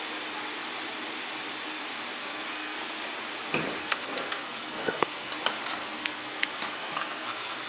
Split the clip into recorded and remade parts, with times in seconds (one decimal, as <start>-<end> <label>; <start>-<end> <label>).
0.0-2.2 recorded; 2.2-2.9 remade; 2.9-3.8 recorded; 3.8-5.3 remade; 5.3-5.8 recorded; 5.8-7.7 remade